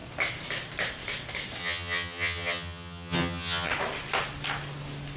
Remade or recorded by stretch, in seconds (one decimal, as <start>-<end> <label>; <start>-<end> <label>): 0.0-1.6 recorded; 1.6-3.7 remade; 3.7-5.2 recorded